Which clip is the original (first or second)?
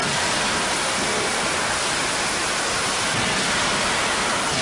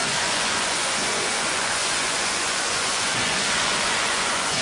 first